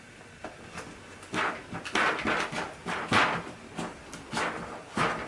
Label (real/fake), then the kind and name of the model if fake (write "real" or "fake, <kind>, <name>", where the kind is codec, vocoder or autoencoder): real